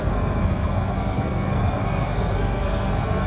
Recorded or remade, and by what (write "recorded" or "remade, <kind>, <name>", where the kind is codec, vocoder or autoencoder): remade, codec, SNAC